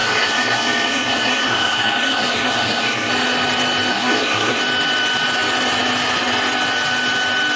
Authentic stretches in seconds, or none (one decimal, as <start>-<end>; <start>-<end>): 3.1-3.9; 4.6-7.6